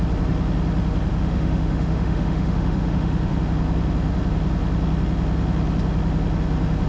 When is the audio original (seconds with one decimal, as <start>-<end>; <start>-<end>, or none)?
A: 0.0-1.1; 3.3-6.9